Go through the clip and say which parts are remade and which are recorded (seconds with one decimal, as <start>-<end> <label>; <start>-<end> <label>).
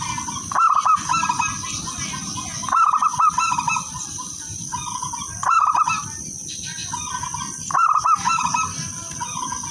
0.0-9.7 recorded